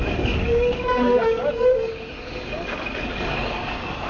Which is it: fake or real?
fake